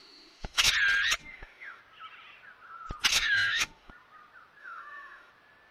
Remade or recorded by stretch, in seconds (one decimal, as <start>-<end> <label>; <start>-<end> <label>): 0.0-0.7 remade; 0.7-1.2 recorded; 1.2-1.8 remade; 1.8-3.1 recorded; 3.1-3.9 remade; 3.9-4.6 recorded; 4.6-5.3 remade; 5.3-5.7 recorded